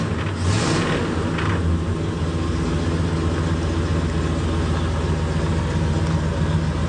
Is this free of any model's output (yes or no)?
yes